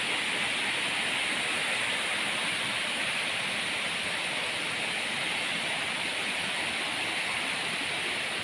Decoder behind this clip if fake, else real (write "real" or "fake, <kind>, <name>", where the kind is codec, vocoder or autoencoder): real